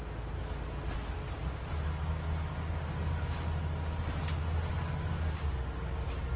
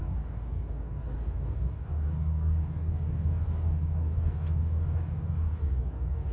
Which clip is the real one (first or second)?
first